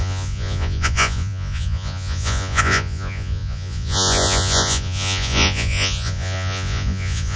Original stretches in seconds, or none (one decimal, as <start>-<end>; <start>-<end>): none